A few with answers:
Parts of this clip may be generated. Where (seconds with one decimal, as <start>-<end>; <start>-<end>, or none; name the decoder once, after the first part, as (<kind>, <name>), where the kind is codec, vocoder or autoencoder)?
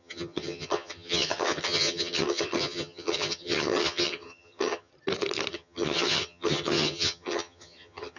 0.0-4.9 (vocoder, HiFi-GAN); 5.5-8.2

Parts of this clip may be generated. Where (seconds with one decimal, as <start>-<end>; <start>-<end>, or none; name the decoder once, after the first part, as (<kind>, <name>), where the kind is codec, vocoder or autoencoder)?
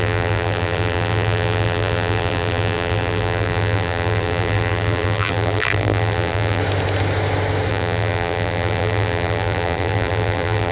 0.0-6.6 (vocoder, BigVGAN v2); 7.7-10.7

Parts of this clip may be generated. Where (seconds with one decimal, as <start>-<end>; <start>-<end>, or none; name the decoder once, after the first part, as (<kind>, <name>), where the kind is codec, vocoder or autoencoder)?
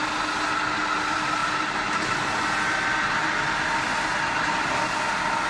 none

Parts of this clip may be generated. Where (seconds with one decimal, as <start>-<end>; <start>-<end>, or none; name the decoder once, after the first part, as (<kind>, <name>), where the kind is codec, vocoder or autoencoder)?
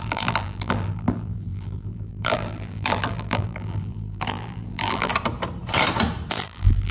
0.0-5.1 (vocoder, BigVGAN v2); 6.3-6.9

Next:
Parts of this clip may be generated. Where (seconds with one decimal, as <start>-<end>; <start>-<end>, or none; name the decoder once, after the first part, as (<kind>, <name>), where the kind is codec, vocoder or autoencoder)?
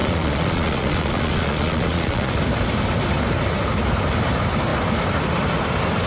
0.0-2.3 (vocoder, Vocos)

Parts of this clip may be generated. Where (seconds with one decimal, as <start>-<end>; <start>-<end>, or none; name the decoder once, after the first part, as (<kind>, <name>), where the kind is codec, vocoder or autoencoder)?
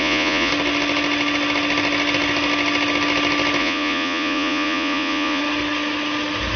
0.0-0.5 (vocoder, Vocos); 3.6-5.4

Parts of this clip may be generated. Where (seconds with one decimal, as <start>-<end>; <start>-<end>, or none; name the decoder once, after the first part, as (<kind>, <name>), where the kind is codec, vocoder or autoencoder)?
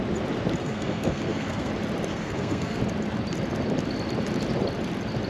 0.6-1.7 (codec, SNAC); 2.1-2.8